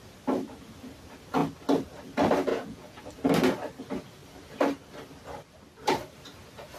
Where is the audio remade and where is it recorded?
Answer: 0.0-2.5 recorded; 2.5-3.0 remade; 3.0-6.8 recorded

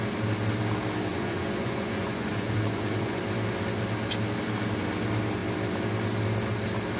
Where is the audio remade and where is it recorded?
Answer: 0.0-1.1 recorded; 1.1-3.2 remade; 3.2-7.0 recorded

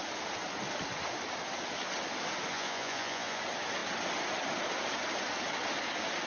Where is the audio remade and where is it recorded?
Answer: 0.0-2.5 recorded; 2.5-3.4 remade; 3.4-6.3 recorded

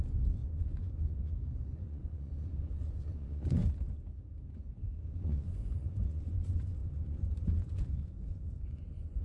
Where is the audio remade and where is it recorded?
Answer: 0.0-3.6 remade; 3.6-4.5 recorded; 4.5-9.2 remade

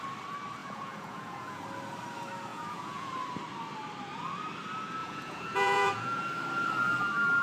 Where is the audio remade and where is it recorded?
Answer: 0.0-0.6 recorded; 0.6-1.6 remade; 1.6-2.5 recorded; 2.5-3.1 remade; 3.1-5.0 recorded; 5.0-6.2 remade; 6.2-7.4 recorded

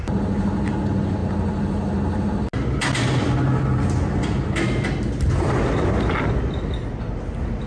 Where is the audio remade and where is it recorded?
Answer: 0.0-7.7 recorded

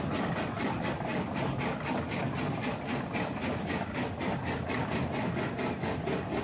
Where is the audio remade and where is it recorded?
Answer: 0.0-6.4 recorded